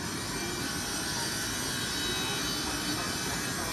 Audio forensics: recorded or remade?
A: recorded